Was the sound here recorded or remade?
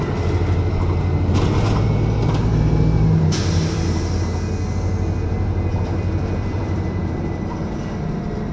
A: recorded